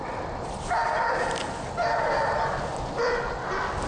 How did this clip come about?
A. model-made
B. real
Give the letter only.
B